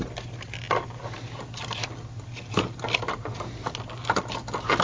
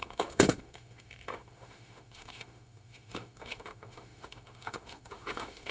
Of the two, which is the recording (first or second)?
first